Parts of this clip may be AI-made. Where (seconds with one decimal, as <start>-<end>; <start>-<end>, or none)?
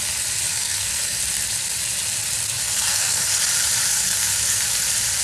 0.5-1.2; 2.6-3.4; 3.9-4.6